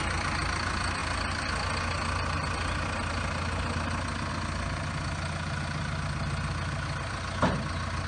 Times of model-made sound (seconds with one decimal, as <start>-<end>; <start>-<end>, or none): none